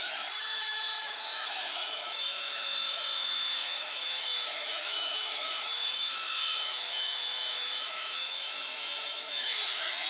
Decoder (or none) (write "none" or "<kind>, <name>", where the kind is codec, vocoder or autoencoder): autoencoder, DAC-VAE